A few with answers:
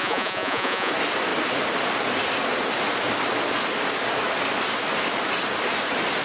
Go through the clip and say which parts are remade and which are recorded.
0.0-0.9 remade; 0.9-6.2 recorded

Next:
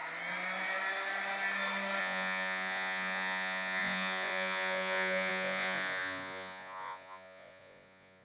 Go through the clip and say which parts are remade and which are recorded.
0.0-2.0 recorded; 2.0-8.2 remade